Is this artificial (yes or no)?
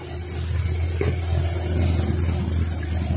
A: no